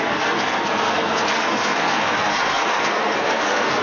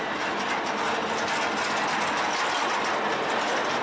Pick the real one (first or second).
second